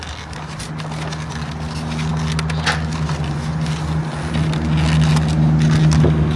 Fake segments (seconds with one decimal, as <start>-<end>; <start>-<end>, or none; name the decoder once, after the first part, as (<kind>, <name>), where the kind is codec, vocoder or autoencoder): none